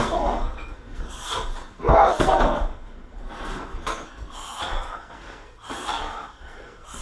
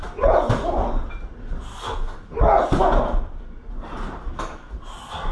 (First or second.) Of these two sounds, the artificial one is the first